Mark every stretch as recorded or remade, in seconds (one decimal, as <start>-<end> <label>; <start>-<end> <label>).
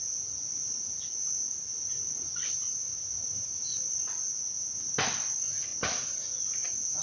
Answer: 0.0-1.7 recorded; 1.7-4.0 remade; 4.0-7.0 recorded